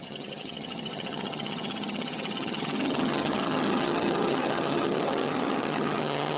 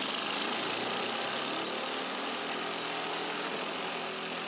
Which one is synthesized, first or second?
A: first